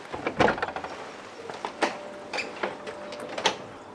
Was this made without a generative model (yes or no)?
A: yes